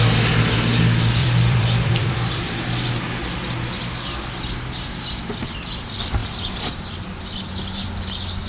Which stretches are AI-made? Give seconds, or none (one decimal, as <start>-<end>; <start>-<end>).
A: 1.2-2.4